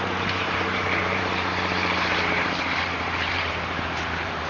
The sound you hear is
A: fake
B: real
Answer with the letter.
A